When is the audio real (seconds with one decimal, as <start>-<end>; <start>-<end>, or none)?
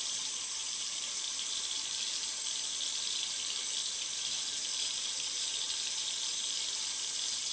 0.0-0.6; 1.1-4.5; 5.5-7.5